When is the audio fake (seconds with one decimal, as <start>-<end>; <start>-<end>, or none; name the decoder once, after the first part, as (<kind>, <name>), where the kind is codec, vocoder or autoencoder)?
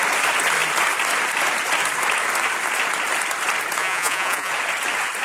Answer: 3.8-4.5 (vocoder, Vocos)